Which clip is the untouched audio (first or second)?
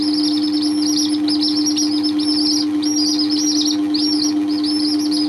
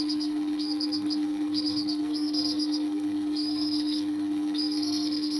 first